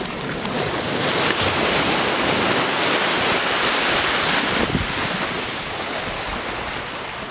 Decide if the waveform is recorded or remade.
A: recorded